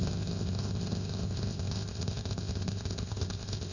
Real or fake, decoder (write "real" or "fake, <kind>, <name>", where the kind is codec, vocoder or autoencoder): fake, codec, ZipCodec